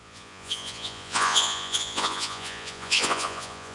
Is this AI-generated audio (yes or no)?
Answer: yes